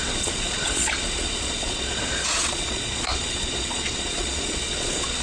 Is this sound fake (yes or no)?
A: yes